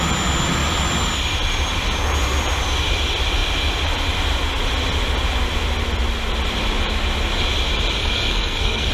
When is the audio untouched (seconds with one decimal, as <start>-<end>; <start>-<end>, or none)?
0.0-8.0